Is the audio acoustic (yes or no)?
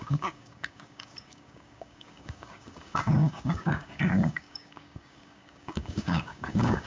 no